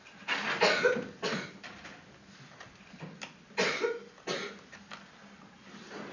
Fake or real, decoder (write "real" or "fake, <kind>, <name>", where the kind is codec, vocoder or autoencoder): real